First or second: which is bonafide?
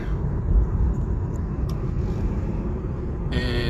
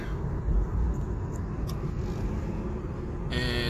second